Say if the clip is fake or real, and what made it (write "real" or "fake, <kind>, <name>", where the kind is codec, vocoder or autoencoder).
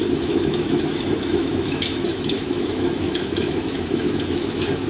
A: fake, autoencoder, DAC-VAE